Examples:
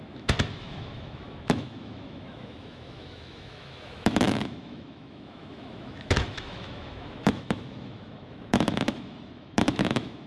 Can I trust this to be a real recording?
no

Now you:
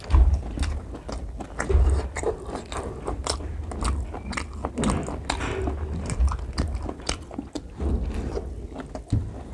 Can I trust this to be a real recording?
yes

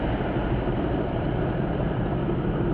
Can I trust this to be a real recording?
no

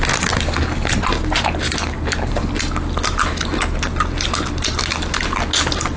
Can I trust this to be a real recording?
yes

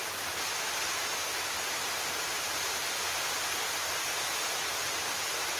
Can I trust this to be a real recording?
yes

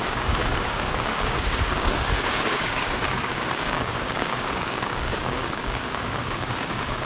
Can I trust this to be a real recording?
no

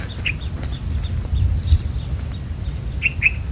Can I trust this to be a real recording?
yes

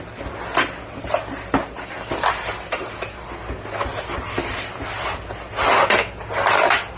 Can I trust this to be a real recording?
yes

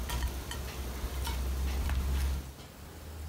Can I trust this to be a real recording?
yes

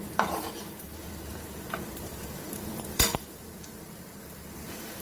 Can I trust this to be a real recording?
no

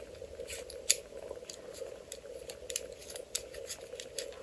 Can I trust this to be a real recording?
yes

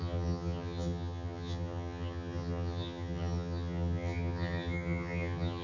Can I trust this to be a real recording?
no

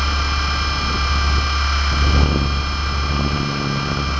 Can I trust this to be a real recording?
yes